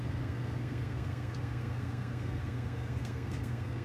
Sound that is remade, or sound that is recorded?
remade